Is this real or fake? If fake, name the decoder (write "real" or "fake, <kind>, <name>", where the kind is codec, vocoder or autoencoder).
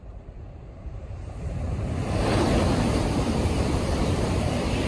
fake, vocoder, BigVGAN v2